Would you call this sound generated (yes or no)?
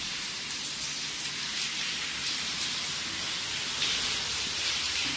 no